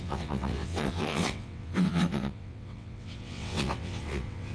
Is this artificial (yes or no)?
yes